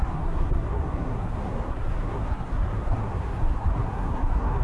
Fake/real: fake